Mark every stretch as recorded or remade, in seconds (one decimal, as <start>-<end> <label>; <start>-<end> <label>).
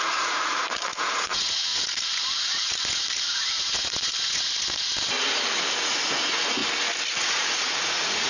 0.0-4.9 remade; 4.9-5.9 recorded; 5.9-6.6 remade; 6.6-7.2 recorded; 7.2-8.3 remade